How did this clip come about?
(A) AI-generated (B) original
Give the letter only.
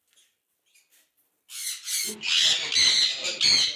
B